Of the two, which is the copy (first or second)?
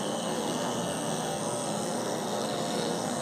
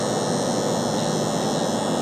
first